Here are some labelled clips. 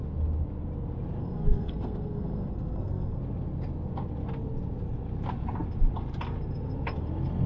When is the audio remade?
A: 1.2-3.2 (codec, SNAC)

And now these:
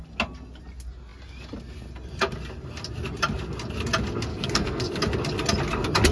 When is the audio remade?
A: 4.3-5.0 (codec, SNAC)

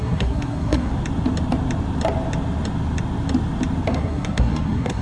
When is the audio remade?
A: 0.0-0.9 (codec, SNAC); 3.9-5.0

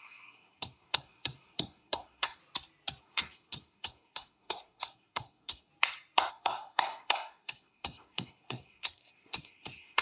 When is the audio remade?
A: 0.0-2.4 (codec, SNAC); 3.0-5.7; 6.3-10.0